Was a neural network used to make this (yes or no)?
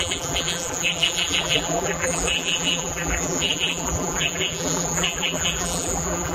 yes